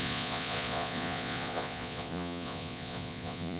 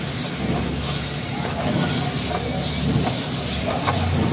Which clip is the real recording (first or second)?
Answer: second